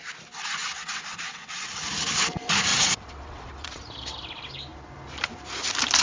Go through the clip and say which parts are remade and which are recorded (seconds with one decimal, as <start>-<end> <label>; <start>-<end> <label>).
0.0-0.6 recorded; 0.6-1.9 remade; 1.9-2.7 recorded; 2.7-3.8 remade; 3.8-6.0 recorded